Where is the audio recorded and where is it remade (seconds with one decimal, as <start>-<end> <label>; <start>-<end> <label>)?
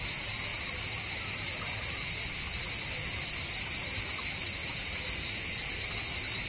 0.0-0.5 recorded; 0.5-2.2 remade; 2.2-6.5 recorded